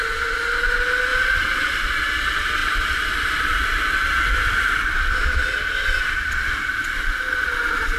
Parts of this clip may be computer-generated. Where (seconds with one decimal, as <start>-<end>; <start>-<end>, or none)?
1.1-1.8; 2.6-6.0